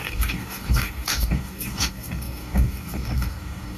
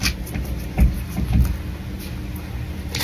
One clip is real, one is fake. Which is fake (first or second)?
first